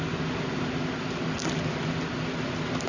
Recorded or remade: recorded